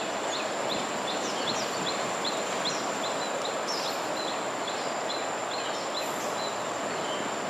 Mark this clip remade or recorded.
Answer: recorded